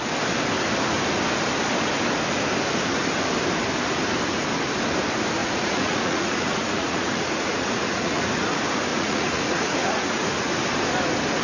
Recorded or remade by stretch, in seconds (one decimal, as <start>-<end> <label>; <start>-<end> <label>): 0.0-5.4 recorded; 5.4-8.2 remade; 8.2-8.9 recorded; 8.9-10.5 remade; 10.5-11.4 recorded